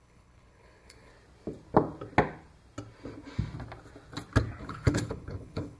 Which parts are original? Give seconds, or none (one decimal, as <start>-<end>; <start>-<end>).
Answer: 1.1-4.6